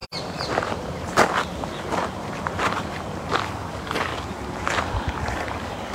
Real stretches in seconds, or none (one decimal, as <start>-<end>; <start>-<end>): 0.0-3.3; 4.1-4.8